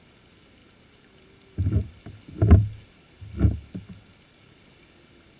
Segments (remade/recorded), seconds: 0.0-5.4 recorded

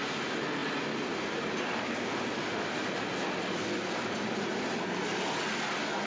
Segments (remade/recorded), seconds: 0.0-6.1 recorded

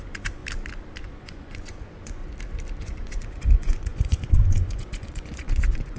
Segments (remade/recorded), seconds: 0.0-0.4 remade; 0.4-1.0 recorded; 1.0-2.2 remade; 2.2-2.8 recorded; 2.8-6.0 remade

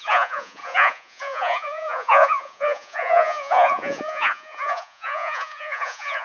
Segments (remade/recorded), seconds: 0.0-6.2 remade